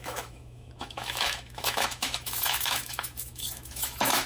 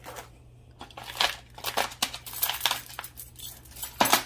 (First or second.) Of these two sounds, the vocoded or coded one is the first